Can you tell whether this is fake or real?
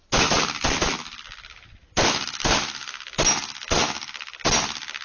real